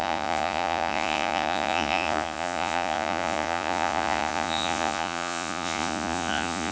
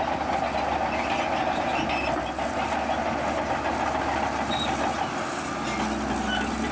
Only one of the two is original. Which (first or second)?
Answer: second